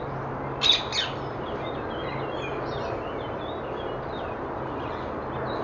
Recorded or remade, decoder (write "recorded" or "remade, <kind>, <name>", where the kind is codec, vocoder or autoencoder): recorded